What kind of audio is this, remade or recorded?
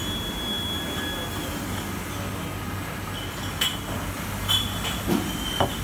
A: recorded